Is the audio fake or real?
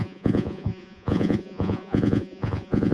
fake